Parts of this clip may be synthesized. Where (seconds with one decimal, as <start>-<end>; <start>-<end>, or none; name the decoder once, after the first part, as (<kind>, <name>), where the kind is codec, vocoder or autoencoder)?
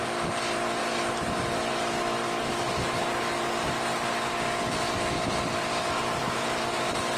0.0-6.2 (vocoder, BigVGAN v2)